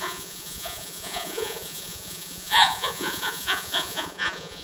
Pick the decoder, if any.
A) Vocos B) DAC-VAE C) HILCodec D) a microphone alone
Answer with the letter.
A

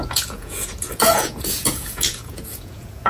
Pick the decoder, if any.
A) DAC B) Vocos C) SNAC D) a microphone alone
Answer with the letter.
B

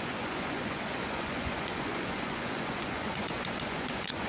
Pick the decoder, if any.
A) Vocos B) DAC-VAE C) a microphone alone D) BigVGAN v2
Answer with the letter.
A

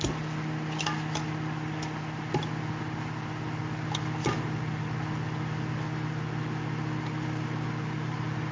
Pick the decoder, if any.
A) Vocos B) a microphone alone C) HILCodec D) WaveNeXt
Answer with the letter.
B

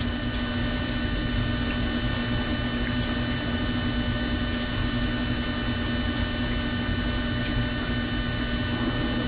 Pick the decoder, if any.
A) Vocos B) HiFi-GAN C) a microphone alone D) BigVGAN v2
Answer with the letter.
C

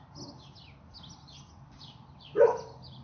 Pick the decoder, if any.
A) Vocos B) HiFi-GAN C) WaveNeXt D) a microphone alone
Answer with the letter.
D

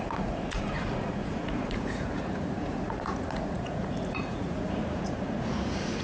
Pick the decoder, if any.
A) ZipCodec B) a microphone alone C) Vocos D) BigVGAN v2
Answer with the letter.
C